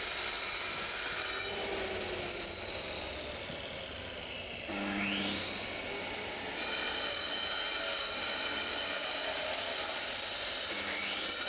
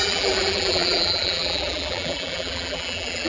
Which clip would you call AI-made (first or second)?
second